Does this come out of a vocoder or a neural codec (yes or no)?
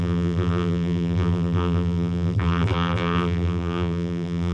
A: yes